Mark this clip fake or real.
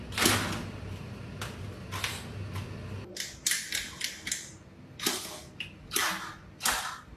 real